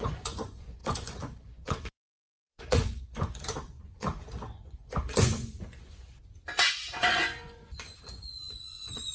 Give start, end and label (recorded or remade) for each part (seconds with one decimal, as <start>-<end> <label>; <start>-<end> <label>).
0.0-6.2 remade; 6.2-6.7 recorded; 6.7-9.1 remade